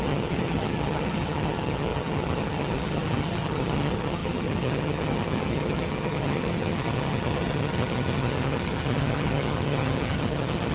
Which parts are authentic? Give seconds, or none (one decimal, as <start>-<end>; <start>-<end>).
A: none